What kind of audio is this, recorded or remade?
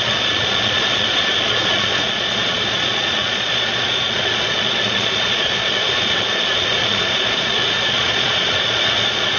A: remade